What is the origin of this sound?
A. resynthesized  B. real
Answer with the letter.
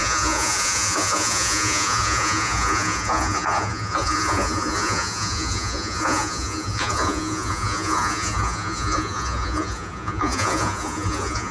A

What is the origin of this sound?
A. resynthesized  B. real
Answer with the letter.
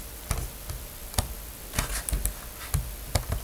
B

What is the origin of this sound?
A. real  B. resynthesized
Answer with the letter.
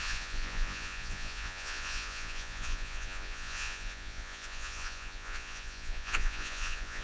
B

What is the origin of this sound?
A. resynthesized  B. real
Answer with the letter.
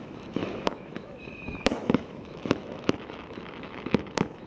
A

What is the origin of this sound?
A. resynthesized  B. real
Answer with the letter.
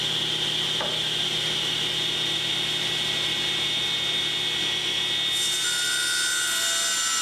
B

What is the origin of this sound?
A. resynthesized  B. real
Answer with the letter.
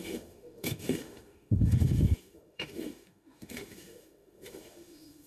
A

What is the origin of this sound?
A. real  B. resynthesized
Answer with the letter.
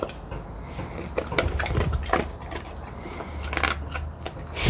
A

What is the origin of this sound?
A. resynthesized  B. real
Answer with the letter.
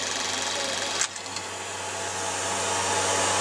B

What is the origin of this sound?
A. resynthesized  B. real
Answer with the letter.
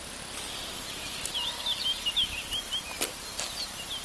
B